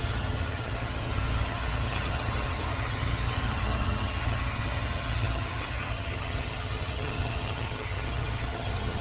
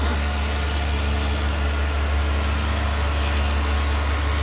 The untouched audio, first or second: second